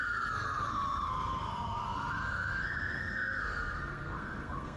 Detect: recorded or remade remade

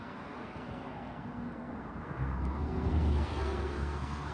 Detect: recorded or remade remade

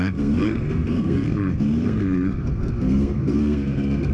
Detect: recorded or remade remade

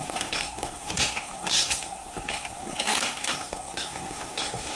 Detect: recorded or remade remade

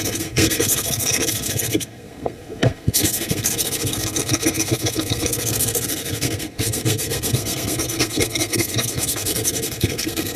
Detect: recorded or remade remade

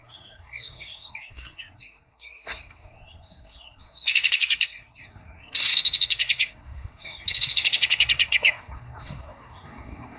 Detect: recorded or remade remade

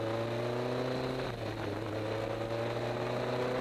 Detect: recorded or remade recorded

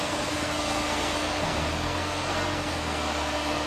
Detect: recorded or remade remade